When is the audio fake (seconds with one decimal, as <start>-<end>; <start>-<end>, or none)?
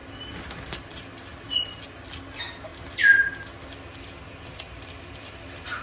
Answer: none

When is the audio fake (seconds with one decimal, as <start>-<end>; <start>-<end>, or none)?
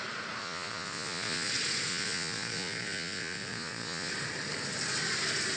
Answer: 0.4-1.5; 1.9-4.1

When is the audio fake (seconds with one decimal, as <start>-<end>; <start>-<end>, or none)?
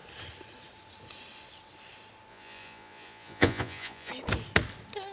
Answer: 2.3-4.1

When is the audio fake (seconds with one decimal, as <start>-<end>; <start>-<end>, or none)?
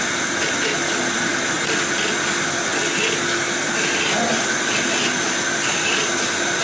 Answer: none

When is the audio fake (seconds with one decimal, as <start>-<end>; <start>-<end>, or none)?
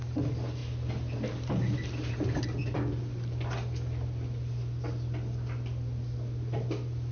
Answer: none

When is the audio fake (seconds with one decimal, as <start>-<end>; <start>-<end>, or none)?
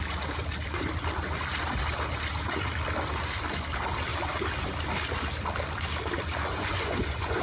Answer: 6.4-7.4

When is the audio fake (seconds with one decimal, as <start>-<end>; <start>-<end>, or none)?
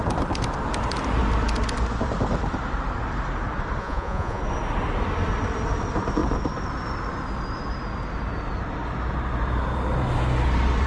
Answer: 3.8-4.4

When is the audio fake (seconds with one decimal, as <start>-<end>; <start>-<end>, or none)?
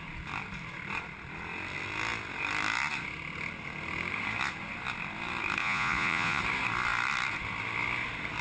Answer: 5.6-6.4